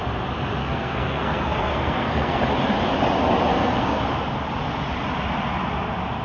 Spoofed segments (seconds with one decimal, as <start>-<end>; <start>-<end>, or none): 0.6-2.4; 3.5-4.0